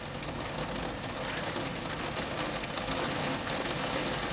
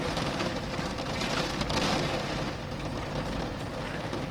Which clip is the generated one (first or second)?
second